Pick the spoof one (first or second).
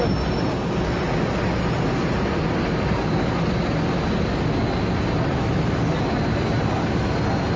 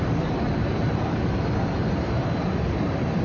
second